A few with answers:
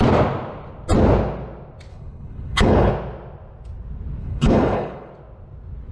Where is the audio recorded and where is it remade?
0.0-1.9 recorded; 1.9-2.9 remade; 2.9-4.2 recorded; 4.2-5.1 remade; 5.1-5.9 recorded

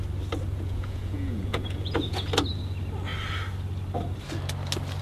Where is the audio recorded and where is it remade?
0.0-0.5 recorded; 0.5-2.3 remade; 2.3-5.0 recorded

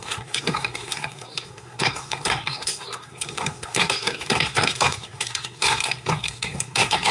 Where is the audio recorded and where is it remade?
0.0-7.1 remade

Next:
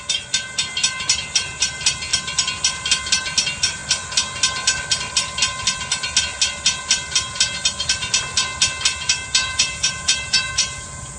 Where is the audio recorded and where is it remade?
0.0-9.4 recorded; 9.4-11.2 remade